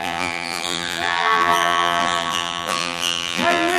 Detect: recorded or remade remade